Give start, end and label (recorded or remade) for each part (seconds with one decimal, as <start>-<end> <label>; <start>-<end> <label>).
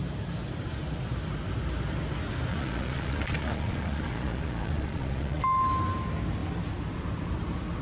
0.0-2.5 recorded; 2.5-5.4 remade; 5.4-7.8 recorded